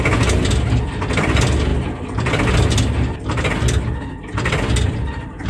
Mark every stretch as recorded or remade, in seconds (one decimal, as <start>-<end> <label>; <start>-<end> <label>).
0.0-5.5 recorded